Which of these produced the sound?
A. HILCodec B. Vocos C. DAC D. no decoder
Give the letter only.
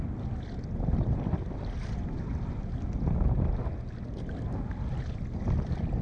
D